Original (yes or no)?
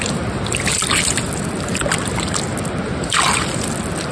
yes